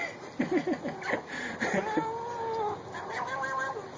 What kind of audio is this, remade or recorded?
recorded